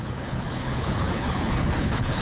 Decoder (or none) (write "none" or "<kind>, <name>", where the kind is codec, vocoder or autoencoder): codec, HILCodec